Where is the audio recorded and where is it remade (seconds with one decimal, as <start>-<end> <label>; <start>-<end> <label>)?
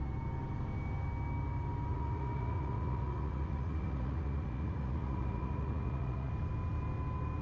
0.0-1.9 recorded; 1.9-6.3 remade; 6.3-7.4 recorded